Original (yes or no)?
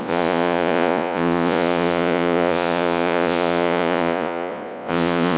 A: no